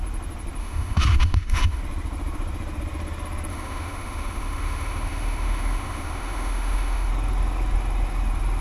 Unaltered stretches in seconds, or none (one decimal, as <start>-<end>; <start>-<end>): 0.0-0.6; 1.8-3.5; 7.1-8.6